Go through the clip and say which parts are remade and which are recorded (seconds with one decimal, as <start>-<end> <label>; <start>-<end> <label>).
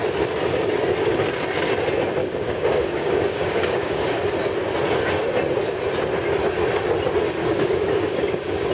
0.0-2.2 recorded; 2.2-4.3 remade; 4.3-7.4 recorded; 7.4-8.7 remade